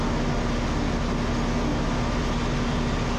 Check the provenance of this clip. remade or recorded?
recorded